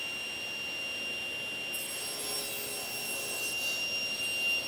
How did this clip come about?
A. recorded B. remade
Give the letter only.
A